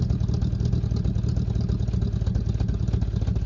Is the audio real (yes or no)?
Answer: yes